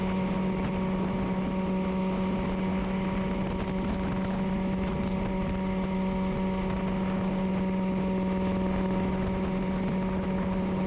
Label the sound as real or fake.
real